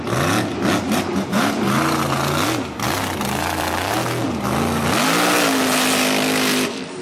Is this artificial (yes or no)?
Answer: no